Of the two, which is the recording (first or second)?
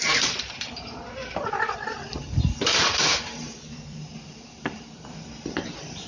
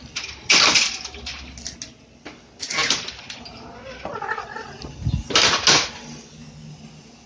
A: second